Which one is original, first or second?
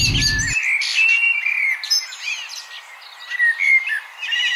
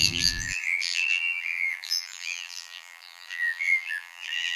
first